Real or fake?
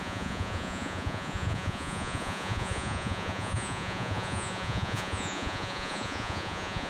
fake